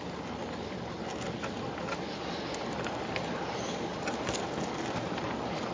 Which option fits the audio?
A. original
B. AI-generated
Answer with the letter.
A